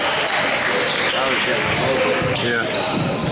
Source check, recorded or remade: recorded